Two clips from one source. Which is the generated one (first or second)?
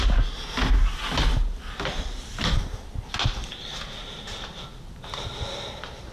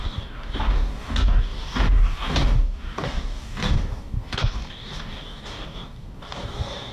second